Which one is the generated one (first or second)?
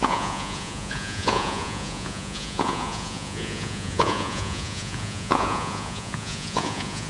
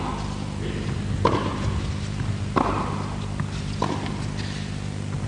first